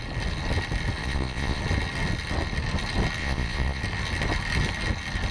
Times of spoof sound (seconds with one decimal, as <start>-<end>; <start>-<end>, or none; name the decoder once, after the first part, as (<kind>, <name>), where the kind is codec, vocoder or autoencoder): 1.0-1.6 (vocoder, Vocos); 3.2-3.8